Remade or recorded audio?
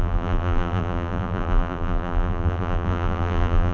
remade